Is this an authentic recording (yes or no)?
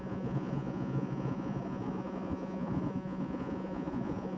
no